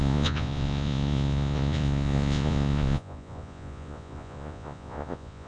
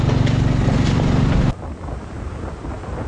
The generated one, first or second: first